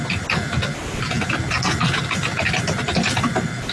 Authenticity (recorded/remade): recorded